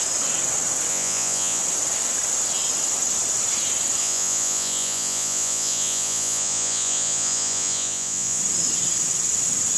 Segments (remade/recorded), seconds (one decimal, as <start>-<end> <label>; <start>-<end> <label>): 0.0-0.9 recorded; 0.9-1.6 remade; 1.6-4.0 recorded; 4.0-8.4 remade; 8.4-9.8 recorded